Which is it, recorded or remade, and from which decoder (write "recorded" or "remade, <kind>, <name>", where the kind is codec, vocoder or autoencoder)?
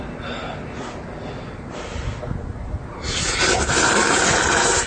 recorded